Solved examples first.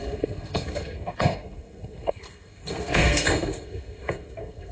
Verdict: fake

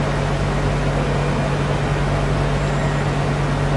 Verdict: real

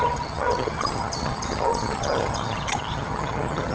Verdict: fake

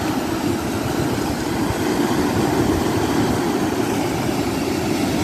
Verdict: real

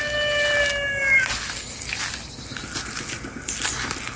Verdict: real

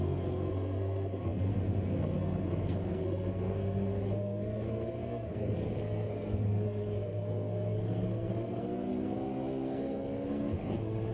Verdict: fake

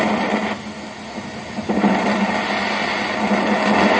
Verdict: real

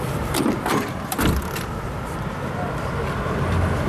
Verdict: fake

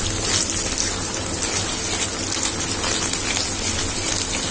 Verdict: real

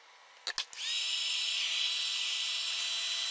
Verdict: real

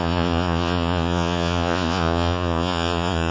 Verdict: fake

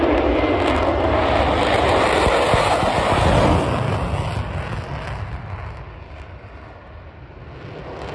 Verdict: real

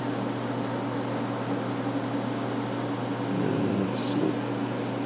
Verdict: real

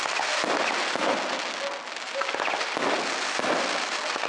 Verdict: real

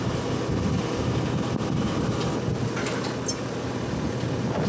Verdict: real